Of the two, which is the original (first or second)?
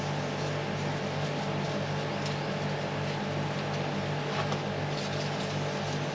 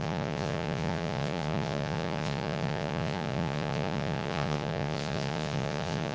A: first